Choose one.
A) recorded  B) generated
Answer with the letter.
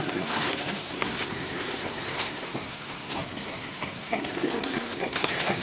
B